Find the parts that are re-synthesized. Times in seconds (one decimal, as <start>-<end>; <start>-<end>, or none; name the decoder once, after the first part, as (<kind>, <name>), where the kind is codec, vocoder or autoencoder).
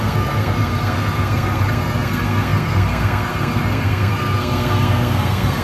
0.0-5.6 (codec, SNAC)